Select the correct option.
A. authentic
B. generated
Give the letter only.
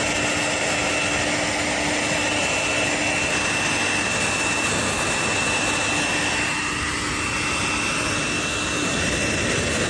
A